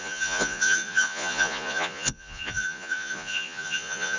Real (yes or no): no